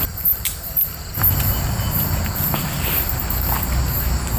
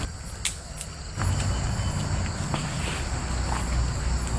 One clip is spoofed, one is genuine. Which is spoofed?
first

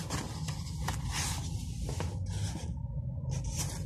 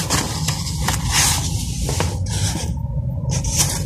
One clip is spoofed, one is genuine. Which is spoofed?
second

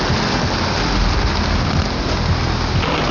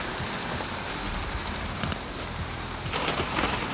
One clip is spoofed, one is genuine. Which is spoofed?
second